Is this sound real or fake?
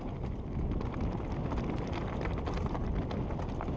real